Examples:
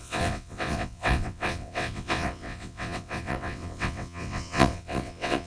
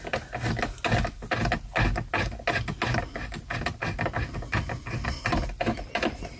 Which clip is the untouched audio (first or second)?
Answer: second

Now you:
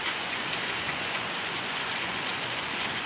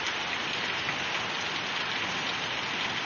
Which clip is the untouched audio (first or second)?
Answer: second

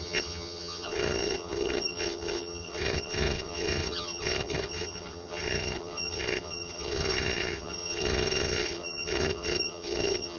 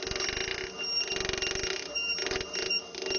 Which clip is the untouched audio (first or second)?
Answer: second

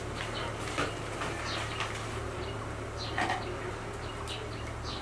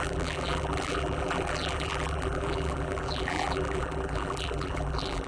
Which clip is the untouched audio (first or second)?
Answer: first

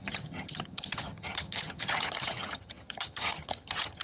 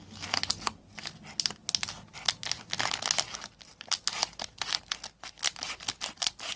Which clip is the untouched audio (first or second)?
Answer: second